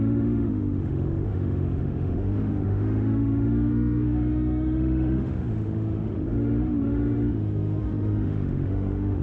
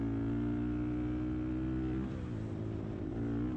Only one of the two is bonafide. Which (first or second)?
second